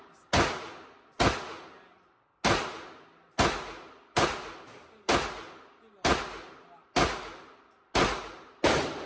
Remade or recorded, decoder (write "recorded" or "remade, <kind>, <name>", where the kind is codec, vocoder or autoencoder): recorded